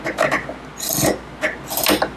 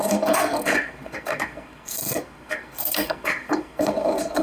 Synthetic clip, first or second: second